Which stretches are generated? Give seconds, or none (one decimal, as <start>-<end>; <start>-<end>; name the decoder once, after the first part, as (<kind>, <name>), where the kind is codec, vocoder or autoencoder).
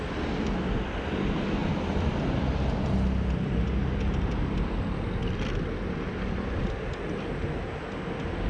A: 1.6-3.5 (vocoder, BigVGAN v2)